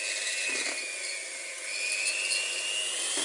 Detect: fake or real real